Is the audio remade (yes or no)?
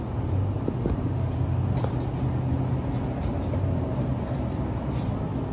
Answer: no